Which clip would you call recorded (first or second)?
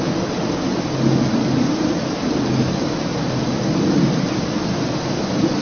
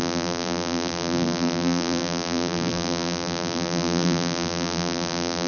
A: first